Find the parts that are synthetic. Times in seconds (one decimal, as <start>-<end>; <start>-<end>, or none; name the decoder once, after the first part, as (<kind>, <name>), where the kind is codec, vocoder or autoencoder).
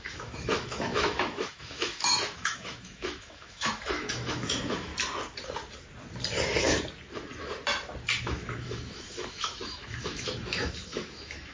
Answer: 0.0-4.9 (autoencoder, DAC-VAE); 8.2-11.5